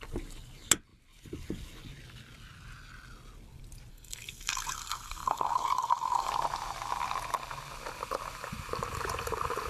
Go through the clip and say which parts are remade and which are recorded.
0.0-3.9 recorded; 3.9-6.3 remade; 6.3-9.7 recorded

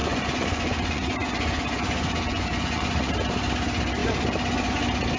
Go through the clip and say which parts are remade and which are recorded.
0.0-3.1 remade; 3.1-5.2 recorded

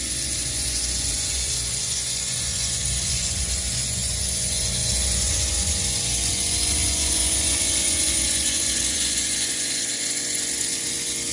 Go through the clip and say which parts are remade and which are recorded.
0.0-11.3 remade

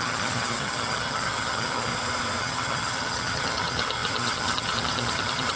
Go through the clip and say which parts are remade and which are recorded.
0.0-1.9 remade; 1.9-2.4 recorded; 2.4-5.6 remade

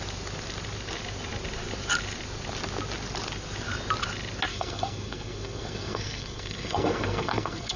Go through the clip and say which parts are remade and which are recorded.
0.0-4.5 recorded; 4.5-7.8 remade

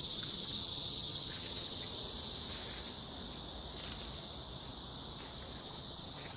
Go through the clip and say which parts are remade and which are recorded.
0.0-1.9 remade; 1.9-5.6 recorded; 5.6-6.4 remade